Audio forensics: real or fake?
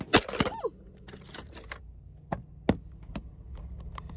real